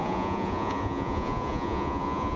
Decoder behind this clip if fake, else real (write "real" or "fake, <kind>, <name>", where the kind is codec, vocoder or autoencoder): fake, vocoder, Vocos